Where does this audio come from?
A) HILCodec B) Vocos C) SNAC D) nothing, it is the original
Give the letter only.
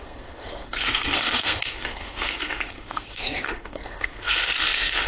C